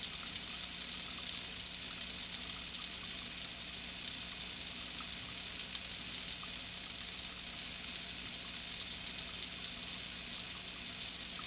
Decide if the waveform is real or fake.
real